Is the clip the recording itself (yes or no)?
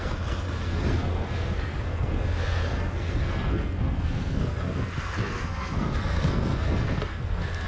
no